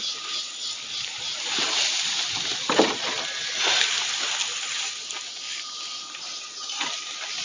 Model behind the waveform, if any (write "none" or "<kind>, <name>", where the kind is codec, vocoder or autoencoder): none